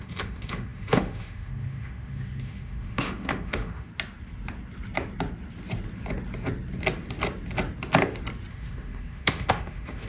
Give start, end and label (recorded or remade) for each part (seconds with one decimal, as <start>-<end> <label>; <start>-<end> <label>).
0.0-3.9 remade; 3.9-8.5 recorded; 8.5-10.1 remade